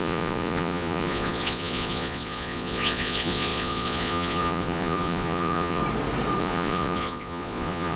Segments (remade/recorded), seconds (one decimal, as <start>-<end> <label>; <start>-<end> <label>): 0.0-5.8 remade; 5.8-6.4 recorded; 6.4-8.0 remade